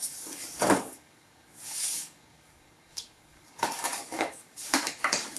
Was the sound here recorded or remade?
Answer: remade